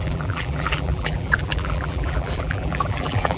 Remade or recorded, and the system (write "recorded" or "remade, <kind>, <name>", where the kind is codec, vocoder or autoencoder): remade, vocoder, BigVGAN v2